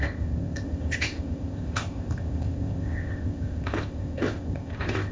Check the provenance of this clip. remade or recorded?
remade